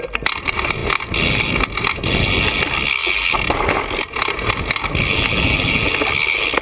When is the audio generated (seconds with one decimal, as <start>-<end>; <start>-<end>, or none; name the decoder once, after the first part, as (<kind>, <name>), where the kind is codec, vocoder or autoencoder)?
none